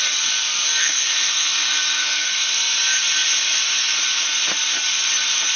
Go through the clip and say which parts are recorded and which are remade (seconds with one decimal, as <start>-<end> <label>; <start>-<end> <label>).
0.0-0.8 recorded; 0.8-2.5 remade; 2.5-5.6 recorded